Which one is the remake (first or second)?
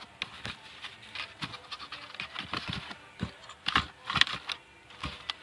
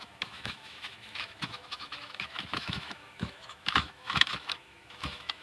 second